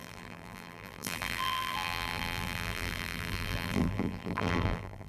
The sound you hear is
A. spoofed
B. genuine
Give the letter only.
A